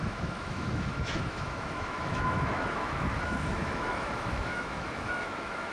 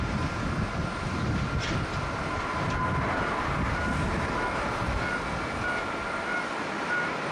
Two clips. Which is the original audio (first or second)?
second